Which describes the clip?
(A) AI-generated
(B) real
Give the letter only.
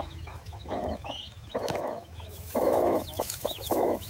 A